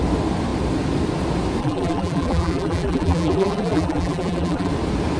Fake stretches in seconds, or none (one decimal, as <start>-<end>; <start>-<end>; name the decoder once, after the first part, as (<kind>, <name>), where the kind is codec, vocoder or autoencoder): 1.6-4.7 (vocoder, BigVGAN v2)